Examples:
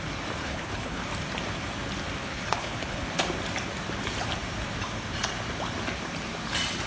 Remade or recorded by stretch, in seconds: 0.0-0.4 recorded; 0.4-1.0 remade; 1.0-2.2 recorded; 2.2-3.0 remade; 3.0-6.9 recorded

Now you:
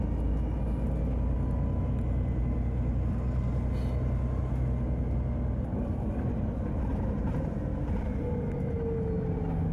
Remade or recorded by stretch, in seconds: 0.0-6.9 recorded; 6.9-7.6 remade; 7.6-9.7 recorded

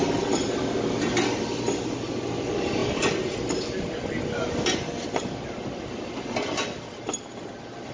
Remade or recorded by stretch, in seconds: 0.0-7.9 recorded

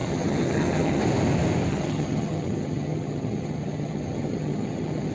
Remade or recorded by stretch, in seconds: 0.0-1.0 remade; 1.0-1.7 recorded; 1.7-5.1 remade

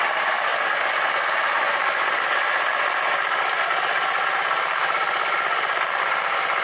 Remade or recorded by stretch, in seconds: 0.0-6.6 recorded

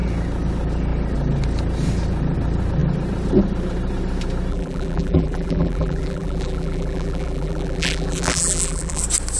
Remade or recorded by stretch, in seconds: 0.0-4.5 recorded; 4.5-9.0 remade; 9.0-9.4 recorded